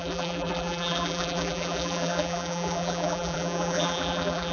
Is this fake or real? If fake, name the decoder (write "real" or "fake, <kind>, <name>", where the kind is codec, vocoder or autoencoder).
fake, vocoder, BigVGAN v2